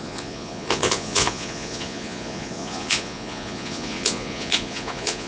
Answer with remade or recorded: remade